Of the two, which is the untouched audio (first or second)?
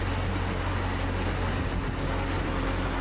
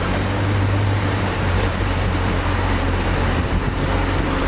first